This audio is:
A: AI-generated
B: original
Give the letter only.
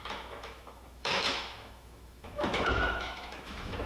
A